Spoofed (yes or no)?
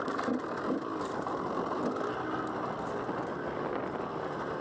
no